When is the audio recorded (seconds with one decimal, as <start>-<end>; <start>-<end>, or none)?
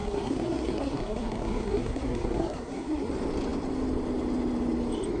3.1-5.2